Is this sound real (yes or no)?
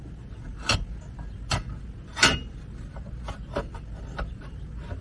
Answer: yes